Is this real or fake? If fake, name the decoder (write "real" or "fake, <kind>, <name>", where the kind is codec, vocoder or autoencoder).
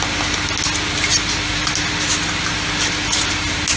real